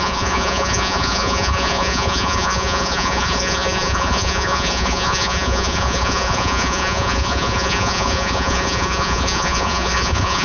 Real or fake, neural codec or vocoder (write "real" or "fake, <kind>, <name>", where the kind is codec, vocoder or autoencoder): fake, vocoder, Vocos